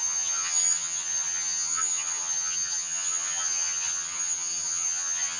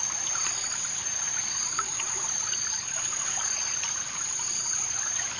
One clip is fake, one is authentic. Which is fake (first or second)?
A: first